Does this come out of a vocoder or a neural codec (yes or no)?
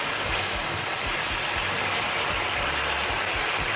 no